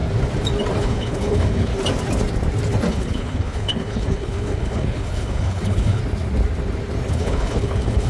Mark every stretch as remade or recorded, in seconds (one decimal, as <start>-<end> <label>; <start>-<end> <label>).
0.0-0.8 recorded; 0.8-1.7 remade; 1.7-2.9 recorded; 2.9-6.0 remade; 6.0-7.1 recorded; 7.1-8.1 remade